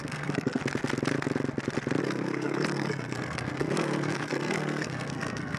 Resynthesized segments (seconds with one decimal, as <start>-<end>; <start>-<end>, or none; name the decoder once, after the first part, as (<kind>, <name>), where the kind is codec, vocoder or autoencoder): 0.0-0.6 (codec, SNAC); 2.0-5.6